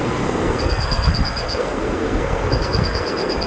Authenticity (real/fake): fake